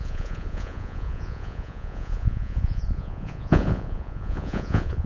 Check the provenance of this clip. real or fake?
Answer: fake